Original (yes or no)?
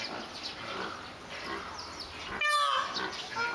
yes